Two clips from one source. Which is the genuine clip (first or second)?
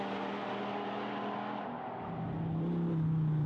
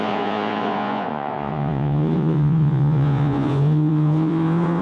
first